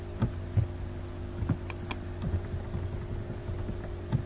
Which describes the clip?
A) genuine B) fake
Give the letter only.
A